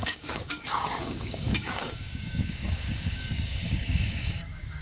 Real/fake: fake